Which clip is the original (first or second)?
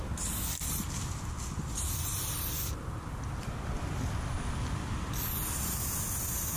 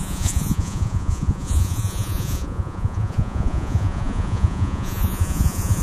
first